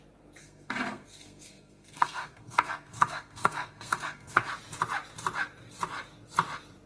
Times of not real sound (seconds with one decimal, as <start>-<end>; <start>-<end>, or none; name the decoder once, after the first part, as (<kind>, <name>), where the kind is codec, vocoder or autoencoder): 0.4-4.5 (codec, SNAC)